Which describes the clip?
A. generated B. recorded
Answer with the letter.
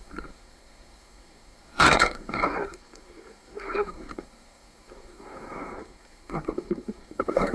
A